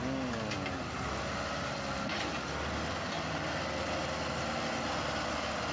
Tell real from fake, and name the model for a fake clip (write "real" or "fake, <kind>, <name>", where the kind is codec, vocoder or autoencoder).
real